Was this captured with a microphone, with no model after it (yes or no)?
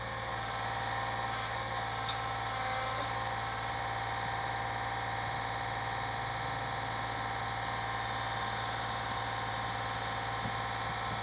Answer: yes